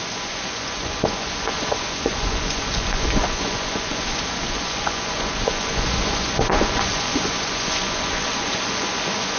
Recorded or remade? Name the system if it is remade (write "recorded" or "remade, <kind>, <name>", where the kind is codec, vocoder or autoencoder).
remade, vocoder, Vocos